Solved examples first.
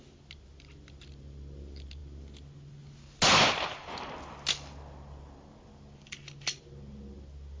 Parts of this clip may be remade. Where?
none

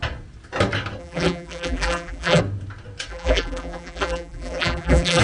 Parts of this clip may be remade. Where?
1.0-2.4 (vocoder, BigVGAN v2); 3.1-5.2

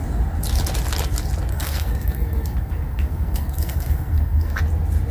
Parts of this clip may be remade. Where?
1.5-4.6 (codec, SNAC)

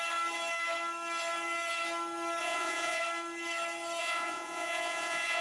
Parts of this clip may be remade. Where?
2.4-3.0 (vocoder, Vocos); 4.0-5.4

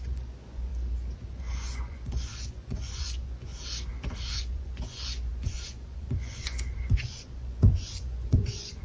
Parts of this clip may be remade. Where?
0.0-0.7 (vocoder, Vocos); 1.3-3.5; 4.3-8.8